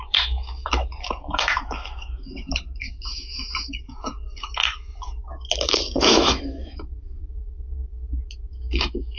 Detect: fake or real fake